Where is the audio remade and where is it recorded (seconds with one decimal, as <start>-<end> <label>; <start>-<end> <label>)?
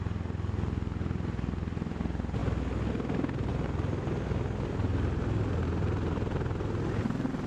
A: 0.0-7.5 recorded